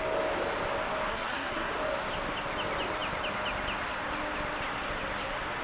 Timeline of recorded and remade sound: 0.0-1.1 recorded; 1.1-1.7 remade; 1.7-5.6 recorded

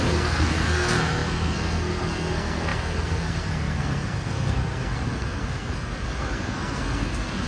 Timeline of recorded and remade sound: 0.0-7.5 remade

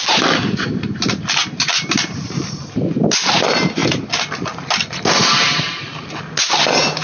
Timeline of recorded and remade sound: 0.0-1.4 recorded; 1.4-2.8 remade; 2.8-7.0 recorded